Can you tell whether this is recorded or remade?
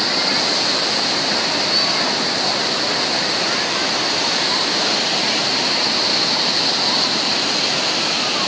recorded